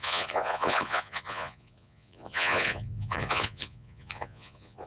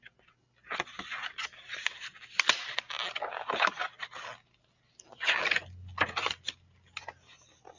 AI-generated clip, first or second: first